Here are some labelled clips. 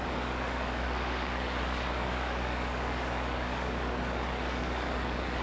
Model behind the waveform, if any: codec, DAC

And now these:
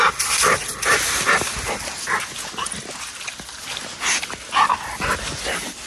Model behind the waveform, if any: none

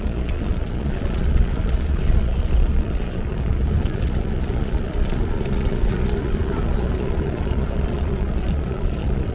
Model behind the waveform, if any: vocoder, Vocos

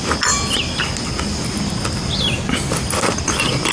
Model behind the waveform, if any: none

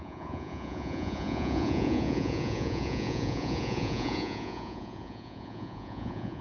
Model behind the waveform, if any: vocoder, Vocos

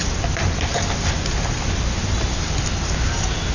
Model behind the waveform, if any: none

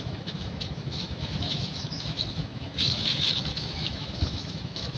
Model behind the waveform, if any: autoencoder, DAC-VAE